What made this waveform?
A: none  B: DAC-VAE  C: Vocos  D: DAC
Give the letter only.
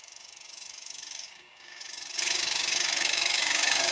D